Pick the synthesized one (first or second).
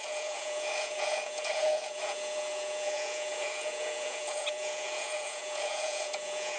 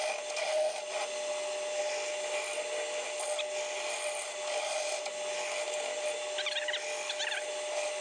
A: first